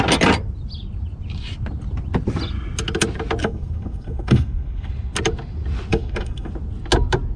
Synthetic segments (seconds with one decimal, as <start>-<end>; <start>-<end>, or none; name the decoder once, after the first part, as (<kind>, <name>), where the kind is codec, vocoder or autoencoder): 3.4-4.9 (codec, SNAC); 5.9-6.5